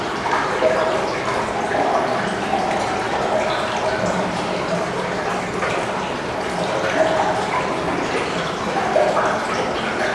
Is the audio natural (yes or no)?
yes